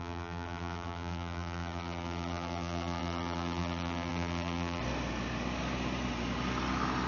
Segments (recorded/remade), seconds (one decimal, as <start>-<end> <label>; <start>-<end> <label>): 0.0-4.8 remade; 4.8-7.1 recorded